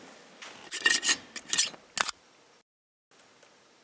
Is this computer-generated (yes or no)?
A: no